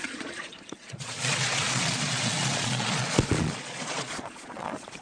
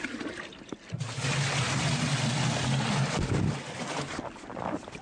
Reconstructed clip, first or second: first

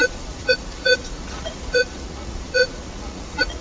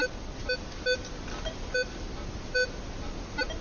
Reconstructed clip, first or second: first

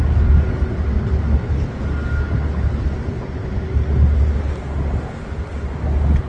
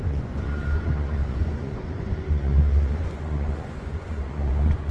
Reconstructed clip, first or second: second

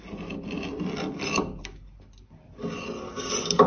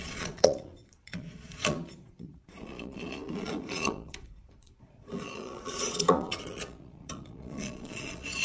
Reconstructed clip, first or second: second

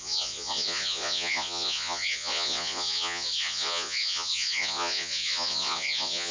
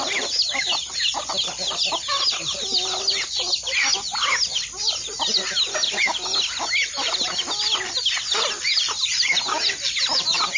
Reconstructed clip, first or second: first